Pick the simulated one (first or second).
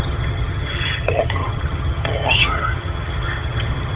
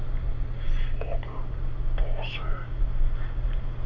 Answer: first